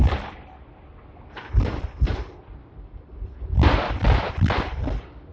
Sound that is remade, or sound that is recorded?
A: recorded